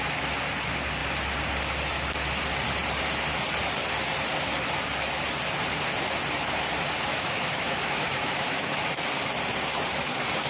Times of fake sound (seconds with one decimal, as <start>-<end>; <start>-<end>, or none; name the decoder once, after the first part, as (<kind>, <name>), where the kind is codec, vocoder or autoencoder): 7.1-8.9 (autoencoder, DAC-VAE)